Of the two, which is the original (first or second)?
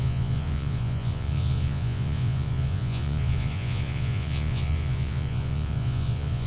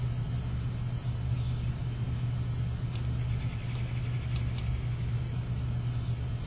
second